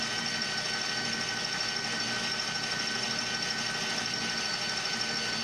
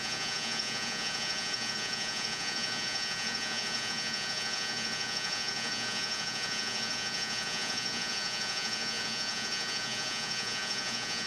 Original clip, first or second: first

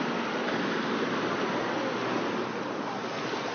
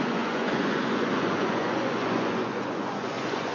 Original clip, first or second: first